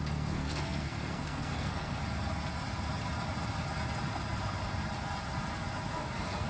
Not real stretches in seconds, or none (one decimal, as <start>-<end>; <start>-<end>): 0.0-2.0; 5.9-6.5